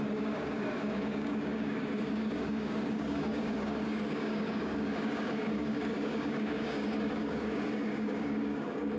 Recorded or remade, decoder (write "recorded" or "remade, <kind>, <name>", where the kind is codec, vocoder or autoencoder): remade, codec, DAC